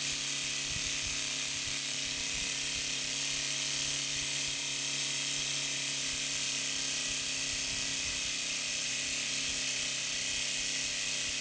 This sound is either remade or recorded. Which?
recorded